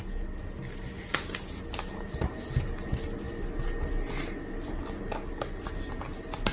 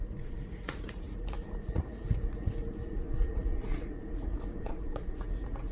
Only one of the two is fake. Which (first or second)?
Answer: second